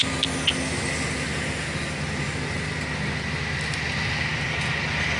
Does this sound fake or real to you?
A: real